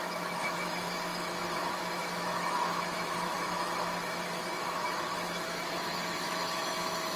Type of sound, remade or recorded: remade